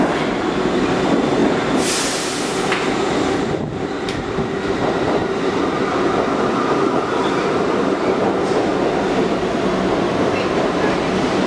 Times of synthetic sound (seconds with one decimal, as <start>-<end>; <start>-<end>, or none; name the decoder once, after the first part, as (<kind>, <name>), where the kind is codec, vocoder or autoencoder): 0.0-8.7 (vocoder, BigVGAN v2); 10.2-11.5